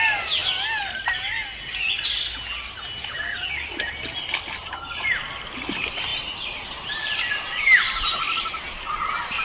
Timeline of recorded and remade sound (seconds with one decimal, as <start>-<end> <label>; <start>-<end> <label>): 0.0-9.4 recorded